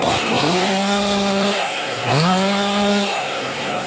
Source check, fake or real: fake